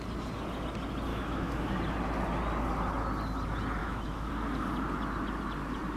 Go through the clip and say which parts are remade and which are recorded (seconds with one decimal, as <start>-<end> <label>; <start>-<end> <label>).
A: 0.0-1.1 recorded; 1.1-1.7 remade; 1.7-3.8 recorded; 3.8-4.3 remade; 4.3-6.0 recorded